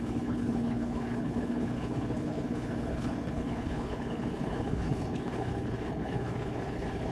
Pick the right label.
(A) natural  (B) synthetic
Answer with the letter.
B